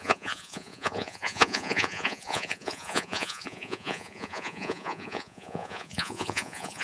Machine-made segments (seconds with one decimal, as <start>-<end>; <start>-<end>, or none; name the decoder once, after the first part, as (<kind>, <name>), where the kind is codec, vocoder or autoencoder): 0.0-6.8 (vocoder, Vocos)